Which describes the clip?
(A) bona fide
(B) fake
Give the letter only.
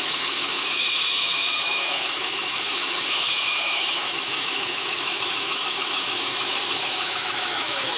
B